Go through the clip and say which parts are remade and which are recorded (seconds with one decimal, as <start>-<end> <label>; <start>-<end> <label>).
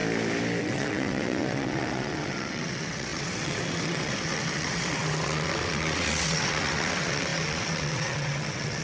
0.0-0.6 recorded; 0.6-8.8 remade